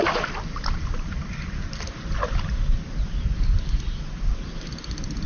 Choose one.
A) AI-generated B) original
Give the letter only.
B